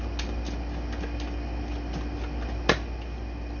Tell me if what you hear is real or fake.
real